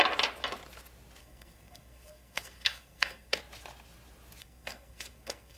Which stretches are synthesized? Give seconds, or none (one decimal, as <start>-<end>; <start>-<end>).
1.2-3.4; 4.4-5.6